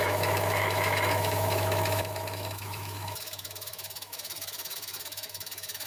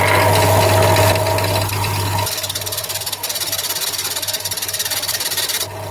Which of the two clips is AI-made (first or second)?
first